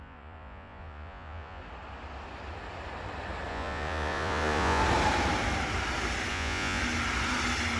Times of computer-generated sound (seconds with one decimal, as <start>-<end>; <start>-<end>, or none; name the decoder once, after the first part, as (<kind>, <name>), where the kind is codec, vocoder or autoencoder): 0.0-1.6 (vocoder, Vocos); 3.5-4.8; 6.3-6.8